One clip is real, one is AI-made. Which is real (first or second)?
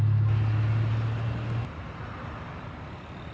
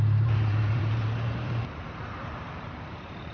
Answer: first